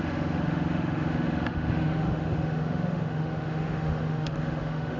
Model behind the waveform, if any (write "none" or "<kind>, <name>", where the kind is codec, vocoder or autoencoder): autoencoder, DAC-VAE